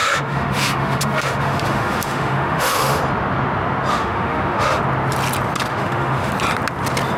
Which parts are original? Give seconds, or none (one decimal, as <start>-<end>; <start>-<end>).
3.0-3.9; 4.8-5.7; 6.3-7.2